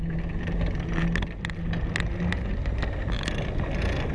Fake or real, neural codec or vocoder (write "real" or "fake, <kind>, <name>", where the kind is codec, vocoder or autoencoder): real